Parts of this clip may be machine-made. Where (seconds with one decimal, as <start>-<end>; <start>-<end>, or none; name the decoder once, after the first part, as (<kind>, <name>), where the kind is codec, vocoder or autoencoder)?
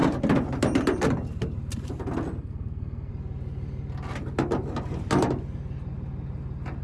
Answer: 2.4-3.1 (codec, SNAC)